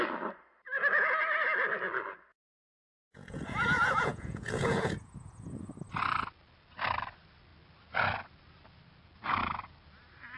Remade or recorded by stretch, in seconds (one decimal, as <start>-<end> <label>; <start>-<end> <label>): 0.0-2.3 recorded; 2.3-5.7 remade; 5.7-10.4 recorded